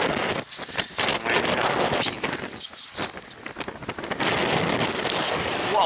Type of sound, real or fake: real